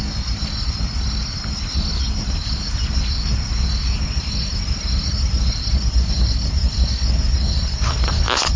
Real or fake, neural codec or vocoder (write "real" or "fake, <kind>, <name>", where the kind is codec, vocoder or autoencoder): real